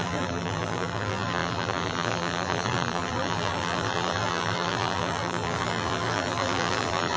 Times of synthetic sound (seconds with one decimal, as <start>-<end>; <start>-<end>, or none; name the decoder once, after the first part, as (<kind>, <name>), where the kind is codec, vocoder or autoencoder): 0.0-7.2 (vocoder, BigVGAN v2)